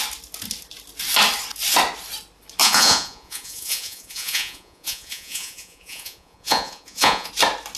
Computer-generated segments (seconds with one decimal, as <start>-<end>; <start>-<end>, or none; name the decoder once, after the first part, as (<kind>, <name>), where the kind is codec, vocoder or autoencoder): 2.6-7.3 (vocoder, Vocos)